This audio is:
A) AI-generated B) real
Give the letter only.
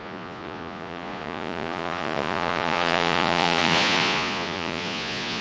A